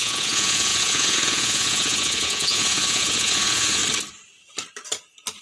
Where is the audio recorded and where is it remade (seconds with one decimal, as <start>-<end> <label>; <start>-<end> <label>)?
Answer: 0.0-3.8 remade; 3.8-5.4 recorded